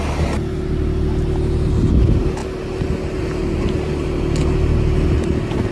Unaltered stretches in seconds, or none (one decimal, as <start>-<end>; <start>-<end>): 0.0-5.7